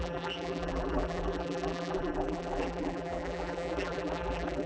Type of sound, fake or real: fake